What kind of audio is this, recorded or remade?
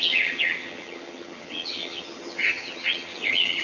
remade